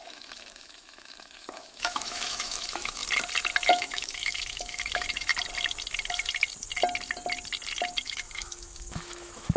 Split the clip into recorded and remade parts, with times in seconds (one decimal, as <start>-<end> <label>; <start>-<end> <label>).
0.0-3.0 remade; 3.0-3.7 recorded; 3.7-5.3 remade; 5.3-8.0 recorded; 8.0-9.6 remade